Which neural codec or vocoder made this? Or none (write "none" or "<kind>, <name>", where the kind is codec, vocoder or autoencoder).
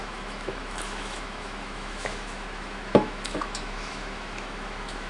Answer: autoencoder, DAC-VAE